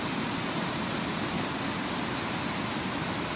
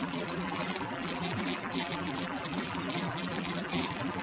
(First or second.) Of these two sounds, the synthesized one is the second